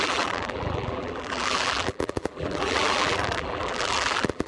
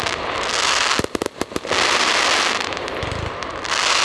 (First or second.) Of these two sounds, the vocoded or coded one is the first